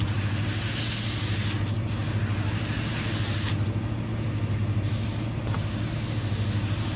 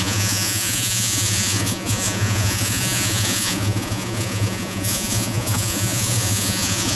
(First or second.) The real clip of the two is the first